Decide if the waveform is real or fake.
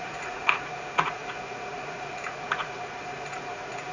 fake